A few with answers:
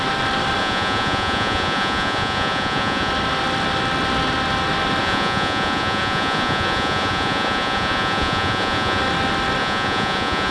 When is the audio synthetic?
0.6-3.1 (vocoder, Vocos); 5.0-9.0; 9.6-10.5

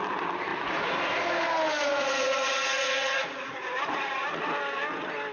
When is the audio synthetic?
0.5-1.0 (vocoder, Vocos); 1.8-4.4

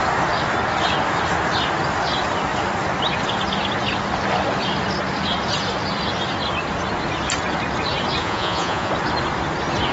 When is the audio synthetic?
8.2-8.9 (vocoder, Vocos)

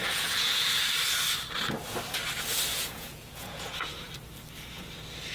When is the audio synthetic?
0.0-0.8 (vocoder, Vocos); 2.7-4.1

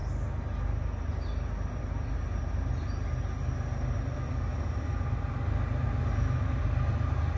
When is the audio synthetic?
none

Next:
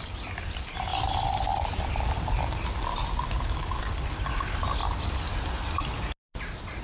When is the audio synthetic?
none

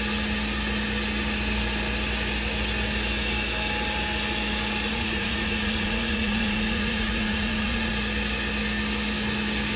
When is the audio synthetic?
4.9-7.9 (vocoder, Vocos)